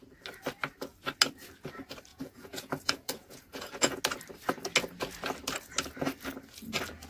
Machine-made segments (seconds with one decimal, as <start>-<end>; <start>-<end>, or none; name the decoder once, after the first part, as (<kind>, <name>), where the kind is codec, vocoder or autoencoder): 2.1-4.0 (vocoder, Vocos)